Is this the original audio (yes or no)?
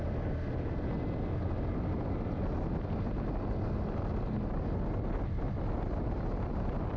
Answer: yes